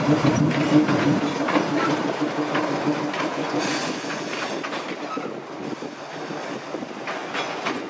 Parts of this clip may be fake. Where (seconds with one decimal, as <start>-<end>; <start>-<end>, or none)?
3.3-4.2; 7.2-7.9

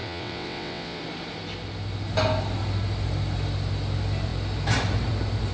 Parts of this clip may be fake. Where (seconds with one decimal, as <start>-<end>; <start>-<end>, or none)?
0.0-1.0

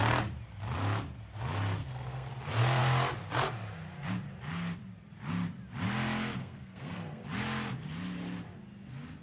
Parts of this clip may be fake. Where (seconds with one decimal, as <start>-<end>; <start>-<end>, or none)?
1.8-2.3; 6.4-7.2

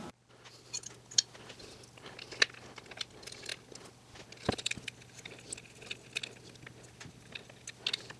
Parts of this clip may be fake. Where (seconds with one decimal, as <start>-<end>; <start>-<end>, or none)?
none

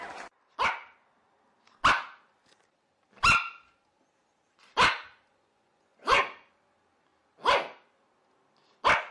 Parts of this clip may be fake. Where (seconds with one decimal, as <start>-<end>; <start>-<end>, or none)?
5.3-6.2

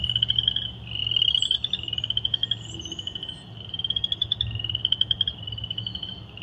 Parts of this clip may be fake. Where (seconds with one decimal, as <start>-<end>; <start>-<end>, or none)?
none